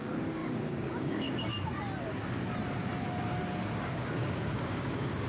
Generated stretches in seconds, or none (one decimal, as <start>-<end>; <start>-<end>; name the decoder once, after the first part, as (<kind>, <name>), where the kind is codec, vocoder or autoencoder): 0.0-1.5 (codec, DAC); 3.6-5.3